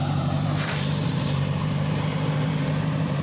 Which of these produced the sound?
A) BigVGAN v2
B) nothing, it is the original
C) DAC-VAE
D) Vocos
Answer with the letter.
A